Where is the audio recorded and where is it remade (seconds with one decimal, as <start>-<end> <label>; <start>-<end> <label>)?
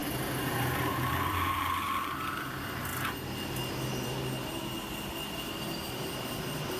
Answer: 0.0-1.1 recorded; 1.1-2.9 remade; 2.9-5.9 recorded; 5.9-6.8 remade